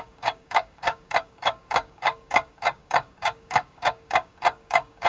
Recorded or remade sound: remade